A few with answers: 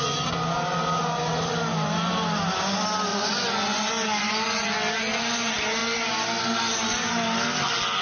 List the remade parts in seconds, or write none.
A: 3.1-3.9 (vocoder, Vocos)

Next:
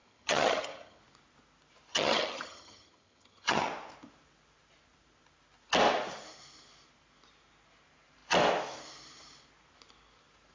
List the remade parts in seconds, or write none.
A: 0.0-1.0 (vocoder, HiFi-GAN); 1.9-3.7

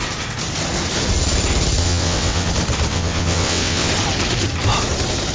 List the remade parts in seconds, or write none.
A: 1.8-2.5 (vocoder, WaveNeXt); 2.9-3.9

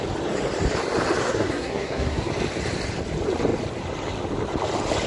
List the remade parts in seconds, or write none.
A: 1.2-2.3 (codec, SNAC)

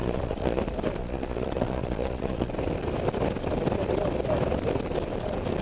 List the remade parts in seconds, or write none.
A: 0.0-0.6 (vocoder, Vocos); 1.0-2.5

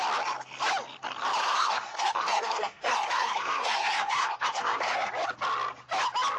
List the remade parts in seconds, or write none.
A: 1.4-5.1 (codec, SNAC)